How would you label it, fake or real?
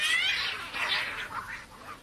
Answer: real